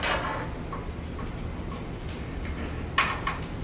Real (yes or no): yes